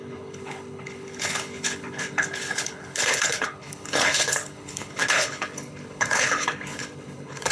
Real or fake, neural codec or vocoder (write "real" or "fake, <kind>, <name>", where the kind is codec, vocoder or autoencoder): fake, codec, HILCodec